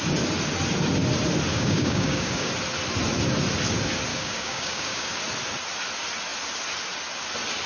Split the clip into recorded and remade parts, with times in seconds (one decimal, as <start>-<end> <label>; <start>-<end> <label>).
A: 0.0-1.5 recorded; 1.5-2.5 remade; 2.5-4.1 recorded; 4.1-5.2 remade; 5.2-7.7 recorded